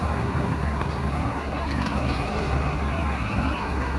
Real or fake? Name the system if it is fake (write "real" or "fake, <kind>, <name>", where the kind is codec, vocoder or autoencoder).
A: fake, codec, SNAC